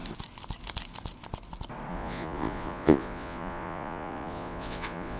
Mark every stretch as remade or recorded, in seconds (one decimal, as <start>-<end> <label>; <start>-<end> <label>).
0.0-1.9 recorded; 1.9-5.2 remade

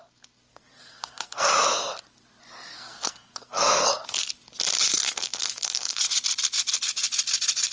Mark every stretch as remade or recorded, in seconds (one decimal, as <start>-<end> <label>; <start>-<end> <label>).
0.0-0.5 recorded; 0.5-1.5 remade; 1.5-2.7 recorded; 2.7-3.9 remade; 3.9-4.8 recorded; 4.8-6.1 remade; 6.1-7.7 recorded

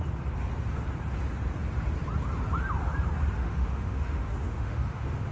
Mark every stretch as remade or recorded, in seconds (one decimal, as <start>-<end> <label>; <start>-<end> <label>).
0.0-3.4 recorded; 3.4-5.3 remade